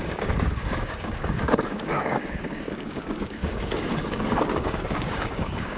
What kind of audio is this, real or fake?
fake